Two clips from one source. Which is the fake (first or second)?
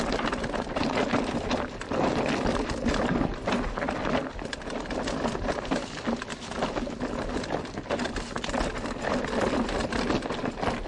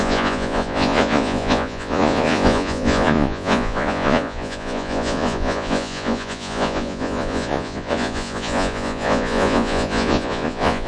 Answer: second